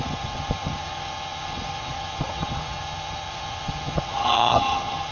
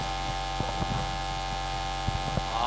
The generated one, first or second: first